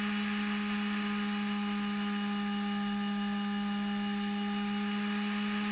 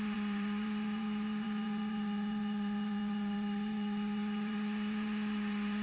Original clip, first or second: first